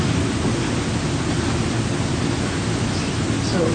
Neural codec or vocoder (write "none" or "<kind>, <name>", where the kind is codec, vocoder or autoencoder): none